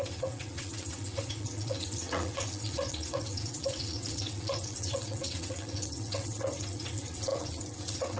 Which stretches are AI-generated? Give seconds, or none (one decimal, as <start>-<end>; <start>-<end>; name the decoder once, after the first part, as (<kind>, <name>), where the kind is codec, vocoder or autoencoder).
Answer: 0.0-8.2 (vocoder, WaveNeXt)